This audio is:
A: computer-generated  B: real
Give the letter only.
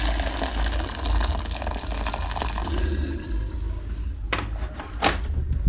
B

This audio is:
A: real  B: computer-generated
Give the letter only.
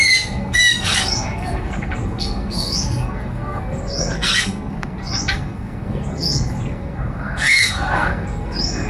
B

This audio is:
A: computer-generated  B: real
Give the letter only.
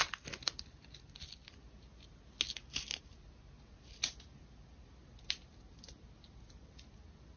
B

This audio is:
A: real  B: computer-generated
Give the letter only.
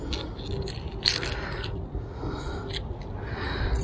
A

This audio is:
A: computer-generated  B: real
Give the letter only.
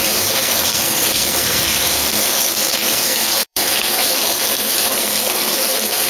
A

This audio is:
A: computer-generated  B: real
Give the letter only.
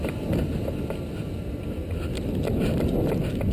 B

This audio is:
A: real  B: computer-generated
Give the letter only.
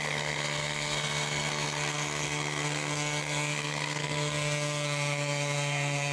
B